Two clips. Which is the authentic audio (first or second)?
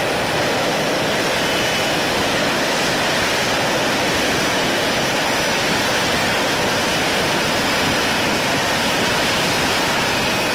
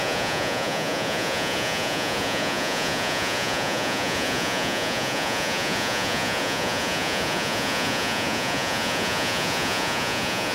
first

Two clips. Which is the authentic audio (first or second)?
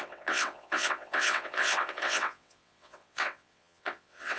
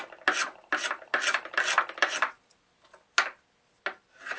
second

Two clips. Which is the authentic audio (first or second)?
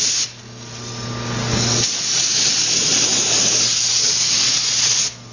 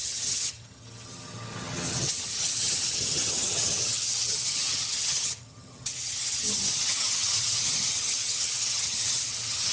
first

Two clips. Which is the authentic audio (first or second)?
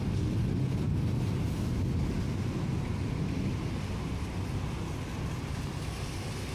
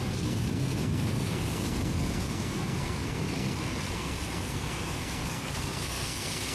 first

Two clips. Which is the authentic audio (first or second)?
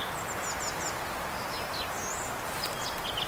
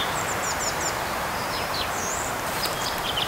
first